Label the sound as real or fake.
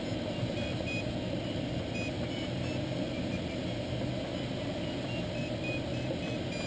real